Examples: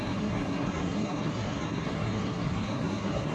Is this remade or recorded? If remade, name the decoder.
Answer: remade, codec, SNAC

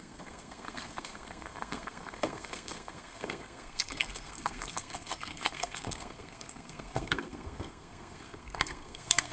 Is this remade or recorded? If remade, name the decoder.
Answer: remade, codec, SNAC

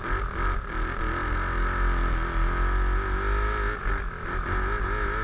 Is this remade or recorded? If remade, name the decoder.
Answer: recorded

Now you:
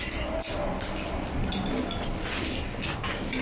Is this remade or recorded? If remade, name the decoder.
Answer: recorded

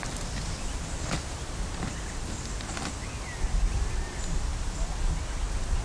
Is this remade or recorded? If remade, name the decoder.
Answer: recorded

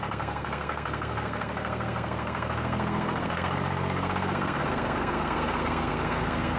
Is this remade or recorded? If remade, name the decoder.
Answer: remade, codec, SNAC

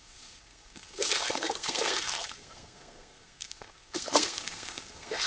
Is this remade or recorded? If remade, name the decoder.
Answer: remade, codec, SNAC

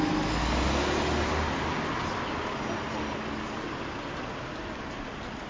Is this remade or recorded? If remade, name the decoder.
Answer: recorded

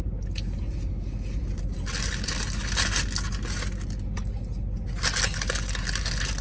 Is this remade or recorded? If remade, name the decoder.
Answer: recorded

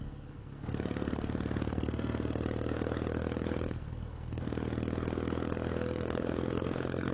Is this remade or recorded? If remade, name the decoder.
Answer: remade, codec, SNAC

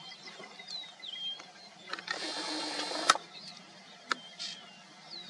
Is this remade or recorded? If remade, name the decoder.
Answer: recorded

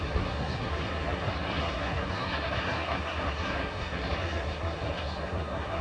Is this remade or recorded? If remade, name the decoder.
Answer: remade, codec, SNAC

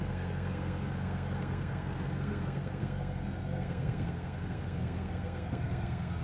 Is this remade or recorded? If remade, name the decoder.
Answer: remade, codec, SNAC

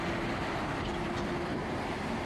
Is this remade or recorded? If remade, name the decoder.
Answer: recorded